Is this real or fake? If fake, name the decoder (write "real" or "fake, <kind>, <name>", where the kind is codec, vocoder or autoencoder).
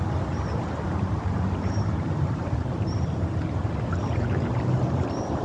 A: fake, vocoder, BigVGAN v2